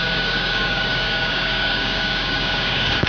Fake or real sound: fake